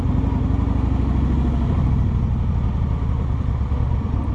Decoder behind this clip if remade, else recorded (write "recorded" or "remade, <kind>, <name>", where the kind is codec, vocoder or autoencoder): recorded